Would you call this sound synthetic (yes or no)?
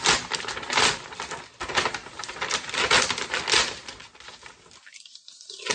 no